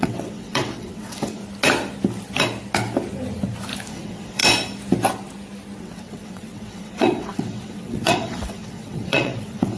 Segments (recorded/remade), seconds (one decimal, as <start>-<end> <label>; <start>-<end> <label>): 0.0-1.4 remade; 1.4-3.9 recorded; 3.9-4.4 remade; 4.4-5.8 recorded; 5.8-9.8 remade